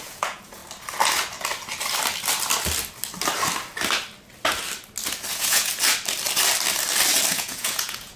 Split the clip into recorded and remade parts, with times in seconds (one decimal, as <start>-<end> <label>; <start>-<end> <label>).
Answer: 0.0-0.6 remade; 0.6-5.3 recorded; 5.3-5.7 remade; 5.7-7.3 recorded; 7.3-8.2 remade